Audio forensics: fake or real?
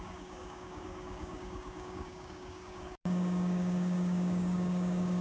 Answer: fake